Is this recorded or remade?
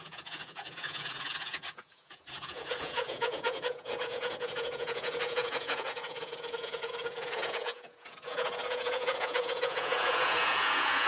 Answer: remade